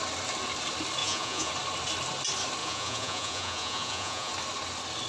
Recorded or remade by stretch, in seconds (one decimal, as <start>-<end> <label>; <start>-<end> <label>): 0.0-1.0 recorded; 1.0-1.5 remade; 1.5-2.6 recorded; 2.6-4.3 remade; 4.3-5.1 recorded